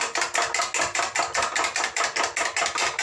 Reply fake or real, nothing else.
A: real